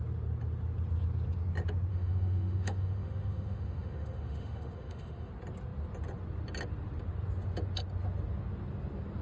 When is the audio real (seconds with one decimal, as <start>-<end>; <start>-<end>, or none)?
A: 0.0-1.9; 5.3-9.2